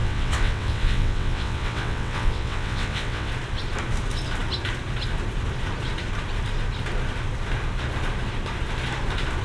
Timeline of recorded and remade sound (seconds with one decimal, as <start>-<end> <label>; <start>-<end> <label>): 0.0-3.3 remade; 3.3-9.4 recorded